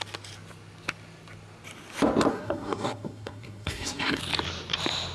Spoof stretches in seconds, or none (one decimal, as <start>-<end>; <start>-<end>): 2.3-4.2